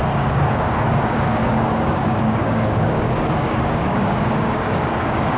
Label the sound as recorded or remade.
remade